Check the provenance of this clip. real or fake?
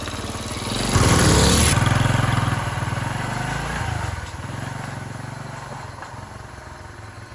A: real